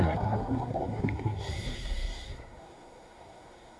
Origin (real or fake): fake